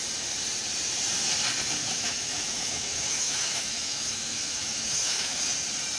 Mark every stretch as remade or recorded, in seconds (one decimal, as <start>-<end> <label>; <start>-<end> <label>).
0.0-1.8 recorded; 1.8-5.4 remade; 5.4-6.0 recorded